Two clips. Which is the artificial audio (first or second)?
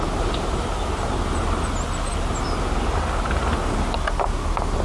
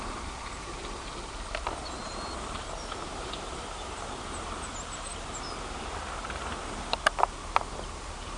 second